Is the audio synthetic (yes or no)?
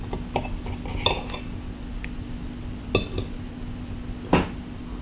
no